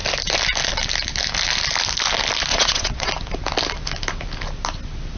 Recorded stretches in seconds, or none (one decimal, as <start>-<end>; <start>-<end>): 0.0-2.5; 3.1-5.2